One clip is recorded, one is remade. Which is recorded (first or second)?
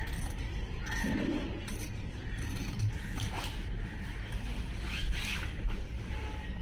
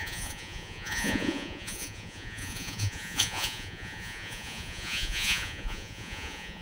first